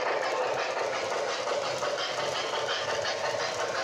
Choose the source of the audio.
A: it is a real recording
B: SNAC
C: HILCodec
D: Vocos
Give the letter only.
A